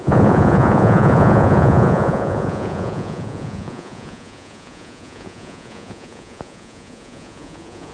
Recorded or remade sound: remade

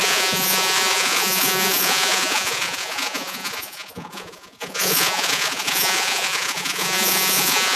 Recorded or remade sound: remade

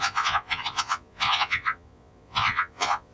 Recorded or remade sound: remade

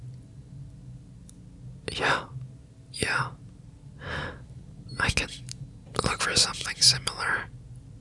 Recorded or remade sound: recorded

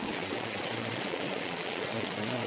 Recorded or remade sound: remade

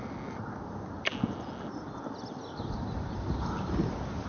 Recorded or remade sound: recorded